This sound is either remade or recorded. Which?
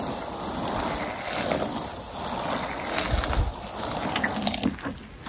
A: recorded